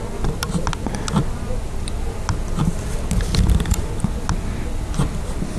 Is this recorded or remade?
recorded